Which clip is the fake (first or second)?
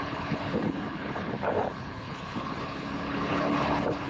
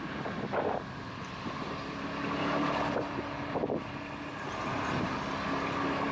first